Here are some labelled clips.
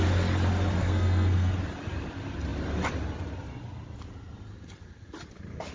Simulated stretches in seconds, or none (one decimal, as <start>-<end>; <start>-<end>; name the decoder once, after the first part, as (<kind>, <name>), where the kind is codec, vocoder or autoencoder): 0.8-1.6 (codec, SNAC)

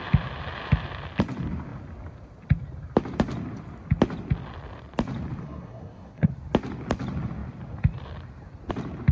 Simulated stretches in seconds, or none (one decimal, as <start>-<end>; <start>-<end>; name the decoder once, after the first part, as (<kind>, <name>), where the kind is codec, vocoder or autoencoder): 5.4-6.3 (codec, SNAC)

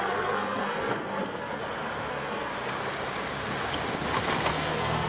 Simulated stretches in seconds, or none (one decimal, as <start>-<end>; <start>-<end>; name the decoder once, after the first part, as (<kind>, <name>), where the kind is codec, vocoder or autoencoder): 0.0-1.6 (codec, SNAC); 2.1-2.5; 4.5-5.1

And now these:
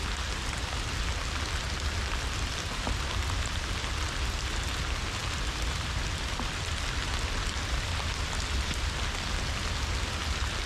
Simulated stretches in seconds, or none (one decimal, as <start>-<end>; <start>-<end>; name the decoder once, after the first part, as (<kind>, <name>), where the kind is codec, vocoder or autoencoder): none

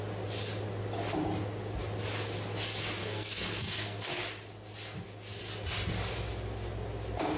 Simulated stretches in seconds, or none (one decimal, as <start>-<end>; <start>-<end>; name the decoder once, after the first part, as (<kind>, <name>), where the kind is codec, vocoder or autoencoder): 3.0-4.2 (codec, SNAC)

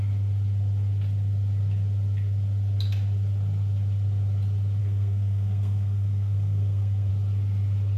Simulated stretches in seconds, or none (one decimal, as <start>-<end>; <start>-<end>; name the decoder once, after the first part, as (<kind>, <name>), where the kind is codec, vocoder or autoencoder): 4.8-7.1 (codec, SNAC)

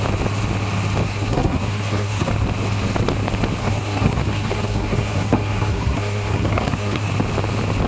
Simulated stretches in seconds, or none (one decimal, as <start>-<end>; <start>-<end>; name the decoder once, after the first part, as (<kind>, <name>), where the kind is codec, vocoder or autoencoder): 1.0-2.3 (codec, SNAC); 3.6-7.1

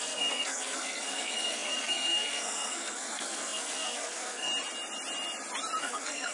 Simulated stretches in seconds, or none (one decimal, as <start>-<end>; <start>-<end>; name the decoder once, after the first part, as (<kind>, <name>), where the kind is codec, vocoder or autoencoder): 0.0-4.5 (codec, SNAC); 5.8-6.3